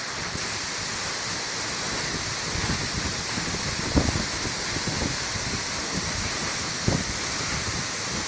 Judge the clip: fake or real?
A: real